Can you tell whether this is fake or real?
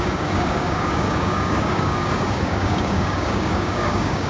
fake